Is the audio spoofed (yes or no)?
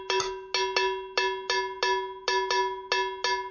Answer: no